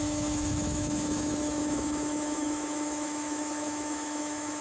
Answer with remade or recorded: remade